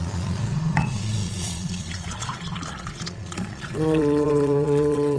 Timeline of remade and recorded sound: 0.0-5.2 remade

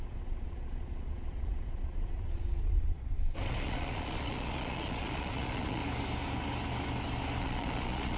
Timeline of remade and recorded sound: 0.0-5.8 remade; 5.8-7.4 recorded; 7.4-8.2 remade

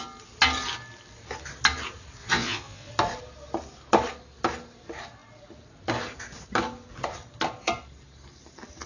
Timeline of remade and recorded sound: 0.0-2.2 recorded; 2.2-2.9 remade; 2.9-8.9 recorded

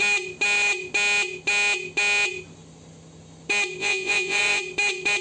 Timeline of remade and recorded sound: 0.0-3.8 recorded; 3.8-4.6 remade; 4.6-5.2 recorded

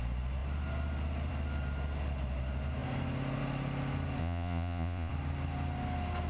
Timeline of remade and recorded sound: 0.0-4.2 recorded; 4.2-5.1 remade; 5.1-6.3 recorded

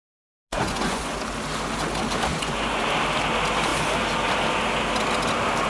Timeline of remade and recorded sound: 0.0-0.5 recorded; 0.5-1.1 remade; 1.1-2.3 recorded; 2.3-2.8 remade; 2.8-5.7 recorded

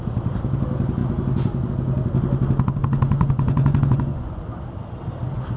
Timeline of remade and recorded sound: 0.0-2.8 recorded; 2.8-4.4 remade; 4.4-5.6 recorded

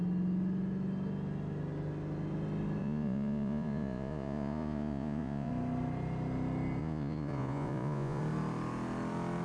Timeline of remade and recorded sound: 0.0-2.8 recorded; 2.8-5.5 remade; 5.5-6.8 recorded; 6.8-8.2 remade; 8.2-9.4 recorded